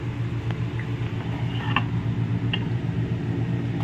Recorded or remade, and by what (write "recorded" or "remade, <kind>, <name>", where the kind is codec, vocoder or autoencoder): recorded